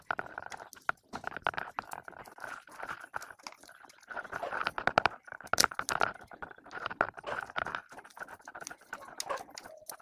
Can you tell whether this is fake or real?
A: real